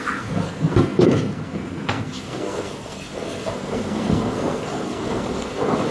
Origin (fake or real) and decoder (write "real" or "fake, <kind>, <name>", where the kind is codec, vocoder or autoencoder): fake, codec, SNAC